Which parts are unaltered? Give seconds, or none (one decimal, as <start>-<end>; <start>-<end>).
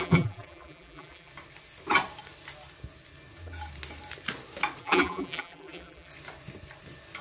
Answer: 1.3-4.8; 6.1-7.2